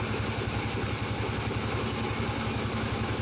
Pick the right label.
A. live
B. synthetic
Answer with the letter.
A